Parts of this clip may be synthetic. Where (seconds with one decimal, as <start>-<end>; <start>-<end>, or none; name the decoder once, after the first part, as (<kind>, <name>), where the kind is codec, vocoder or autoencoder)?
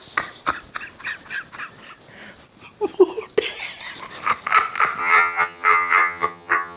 5.0-6.8 (vocoder, HiFi-GAN)